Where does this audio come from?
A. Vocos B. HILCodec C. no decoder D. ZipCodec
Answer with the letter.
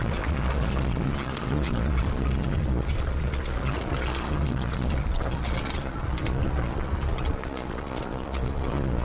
A